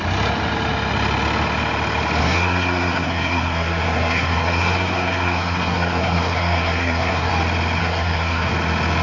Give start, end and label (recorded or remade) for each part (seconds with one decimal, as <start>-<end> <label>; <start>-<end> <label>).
0.0-2.2 recorded; 2.2-7.3 remade; 7.3-7.8 recorded; 7.8-8.5 remade; 8.5-9.0 recorded